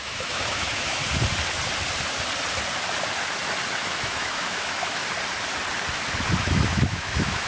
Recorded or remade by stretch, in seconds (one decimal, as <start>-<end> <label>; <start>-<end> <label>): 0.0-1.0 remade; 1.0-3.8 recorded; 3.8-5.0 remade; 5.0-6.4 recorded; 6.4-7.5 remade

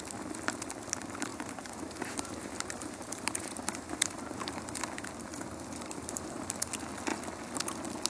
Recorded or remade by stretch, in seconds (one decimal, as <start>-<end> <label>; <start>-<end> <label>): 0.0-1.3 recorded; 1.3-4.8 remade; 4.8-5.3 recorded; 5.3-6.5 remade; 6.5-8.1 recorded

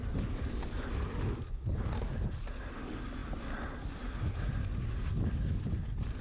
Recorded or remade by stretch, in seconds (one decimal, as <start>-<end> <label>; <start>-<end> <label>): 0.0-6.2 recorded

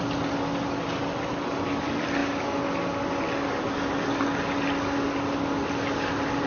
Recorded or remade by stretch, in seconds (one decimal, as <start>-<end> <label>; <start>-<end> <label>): 0.0-6.5 recorded

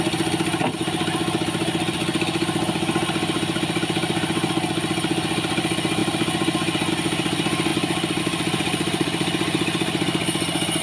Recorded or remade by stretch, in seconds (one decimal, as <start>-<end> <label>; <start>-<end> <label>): 0.0-10.8 recorded